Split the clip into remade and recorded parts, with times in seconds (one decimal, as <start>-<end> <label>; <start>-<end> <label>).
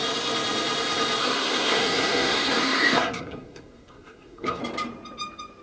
0.0-1.2 recorded; 1.2-4.6 remade; 4.6-5.6 recorded